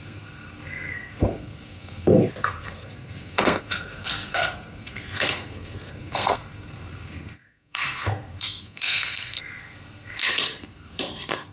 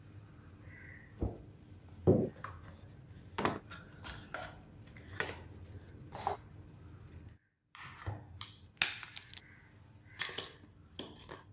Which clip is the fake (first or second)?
first